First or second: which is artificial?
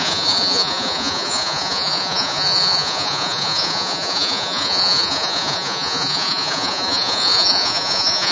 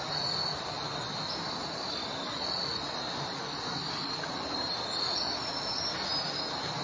first